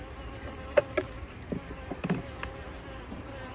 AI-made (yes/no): no